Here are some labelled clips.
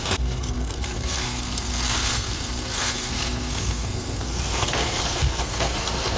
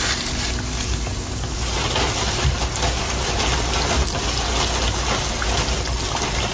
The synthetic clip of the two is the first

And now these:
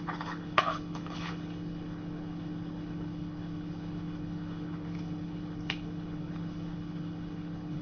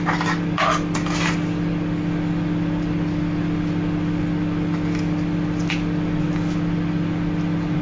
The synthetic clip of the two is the first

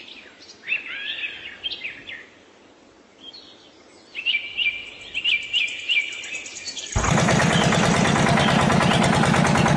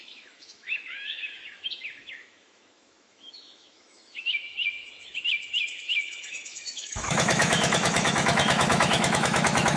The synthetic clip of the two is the second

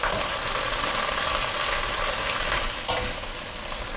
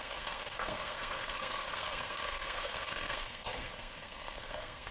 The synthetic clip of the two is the second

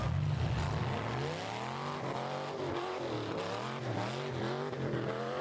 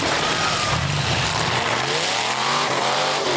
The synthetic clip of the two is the second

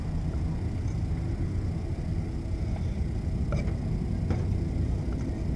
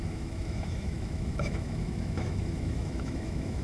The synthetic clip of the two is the second